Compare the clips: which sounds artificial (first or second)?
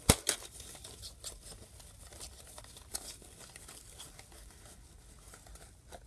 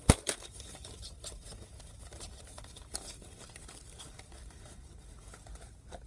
second